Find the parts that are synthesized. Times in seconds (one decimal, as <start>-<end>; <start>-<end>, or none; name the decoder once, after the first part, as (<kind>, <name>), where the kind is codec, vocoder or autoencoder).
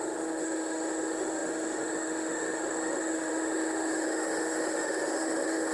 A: 0.0-5.7 (autoencoder, DAC-VAE)